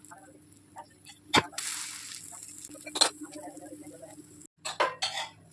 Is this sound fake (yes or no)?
no